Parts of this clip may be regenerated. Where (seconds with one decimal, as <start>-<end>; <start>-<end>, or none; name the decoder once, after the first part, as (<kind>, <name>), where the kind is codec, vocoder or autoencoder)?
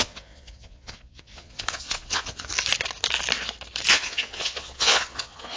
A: 0.0-2.5 (vocoder, Vocos); 3.9-5.6